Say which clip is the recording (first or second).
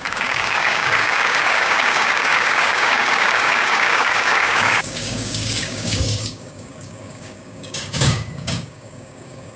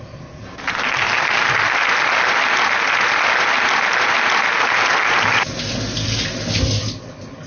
second